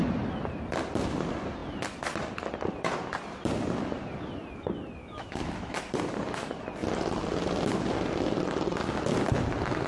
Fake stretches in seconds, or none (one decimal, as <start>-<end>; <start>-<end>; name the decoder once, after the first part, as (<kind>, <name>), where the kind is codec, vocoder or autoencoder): 5.0-5.8 (autoencoder, DAC-VAE)